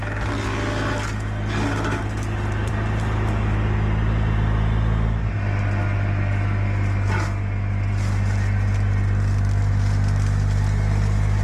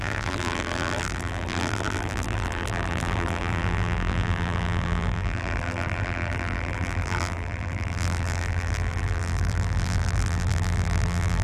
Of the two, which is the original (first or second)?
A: first